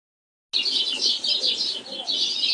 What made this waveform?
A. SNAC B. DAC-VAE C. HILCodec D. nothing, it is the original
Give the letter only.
D